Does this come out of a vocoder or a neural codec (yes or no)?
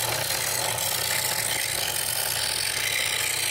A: no